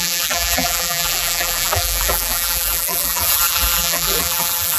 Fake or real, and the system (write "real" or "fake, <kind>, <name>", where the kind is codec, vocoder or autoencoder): fake, vocoder, BigVGAN v2